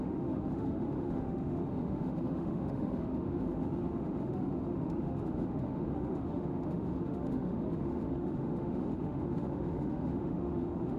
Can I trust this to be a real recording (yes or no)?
no